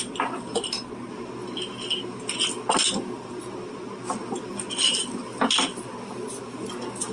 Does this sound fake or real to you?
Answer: real